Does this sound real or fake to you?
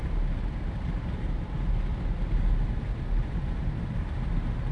real